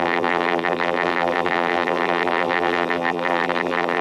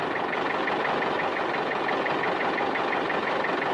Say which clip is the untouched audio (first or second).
second